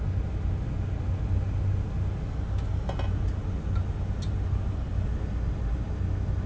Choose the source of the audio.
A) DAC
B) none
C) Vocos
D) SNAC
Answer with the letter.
B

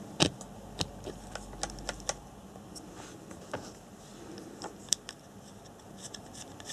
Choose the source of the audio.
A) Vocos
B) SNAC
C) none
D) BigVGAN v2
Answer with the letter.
C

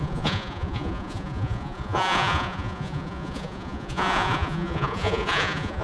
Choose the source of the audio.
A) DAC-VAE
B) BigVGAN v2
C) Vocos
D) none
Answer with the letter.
C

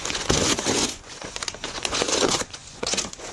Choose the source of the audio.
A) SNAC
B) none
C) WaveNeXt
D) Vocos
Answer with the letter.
D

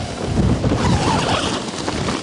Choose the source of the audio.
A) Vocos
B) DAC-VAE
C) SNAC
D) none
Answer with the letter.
D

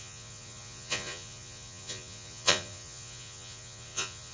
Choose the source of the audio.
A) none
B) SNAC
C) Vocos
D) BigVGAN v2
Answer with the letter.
C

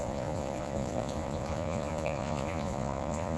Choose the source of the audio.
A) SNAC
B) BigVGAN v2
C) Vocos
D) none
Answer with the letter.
C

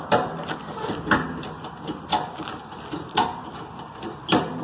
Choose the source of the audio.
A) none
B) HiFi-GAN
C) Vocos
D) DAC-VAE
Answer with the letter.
A